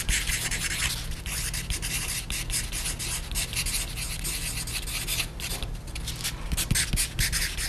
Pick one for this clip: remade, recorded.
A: recorded